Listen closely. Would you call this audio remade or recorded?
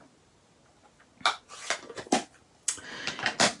recorded